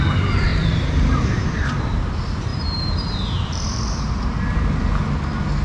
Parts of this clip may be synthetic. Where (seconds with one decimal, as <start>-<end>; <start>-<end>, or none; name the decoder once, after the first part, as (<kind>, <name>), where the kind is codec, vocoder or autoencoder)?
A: 0.5-2.1 (vocoder, BigVGAN v2); 2.5-4.9